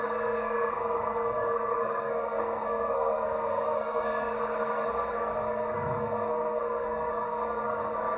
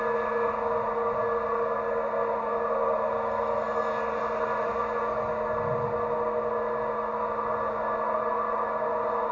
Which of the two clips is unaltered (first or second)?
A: second